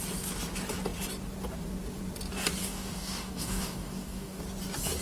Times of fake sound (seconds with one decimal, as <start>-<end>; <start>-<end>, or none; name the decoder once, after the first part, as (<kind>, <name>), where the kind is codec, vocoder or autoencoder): 2.6-4.4 (codec, DAC)